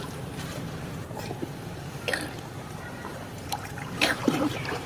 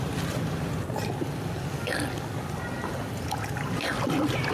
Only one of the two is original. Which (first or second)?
second